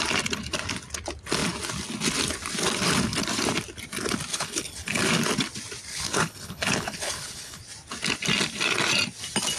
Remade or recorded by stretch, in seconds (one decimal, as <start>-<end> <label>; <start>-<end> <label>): 0.0-4.3 recorded; 4.3-5.1 remade; 5.1-5.9 recorded; 5.9-7.6 remade; 7.6-9.6 recorded